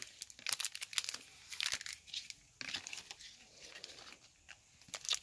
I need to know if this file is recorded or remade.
recorded